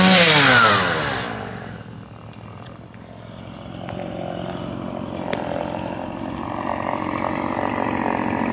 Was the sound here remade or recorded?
remade